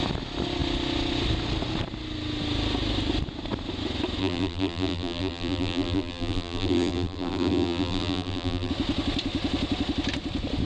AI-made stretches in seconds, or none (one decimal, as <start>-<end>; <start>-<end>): 4.2-8.7

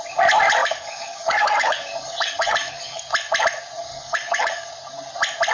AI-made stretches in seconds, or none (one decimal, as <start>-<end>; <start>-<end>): 0.6-3.0; 3.9-4.7

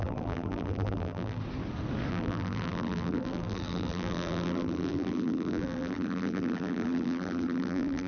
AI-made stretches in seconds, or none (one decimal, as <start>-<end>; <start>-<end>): 0.0-1.4; 2.1-8.1

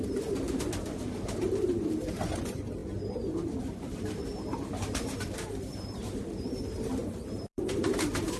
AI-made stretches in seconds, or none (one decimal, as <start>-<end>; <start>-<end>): 0.0-2.8; 3.6-8.4

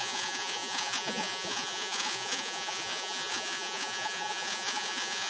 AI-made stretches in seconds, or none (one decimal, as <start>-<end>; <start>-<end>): 0.0-5.3